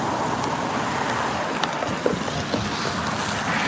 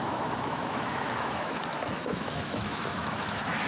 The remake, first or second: second